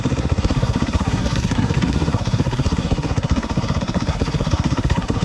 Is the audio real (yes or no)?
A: no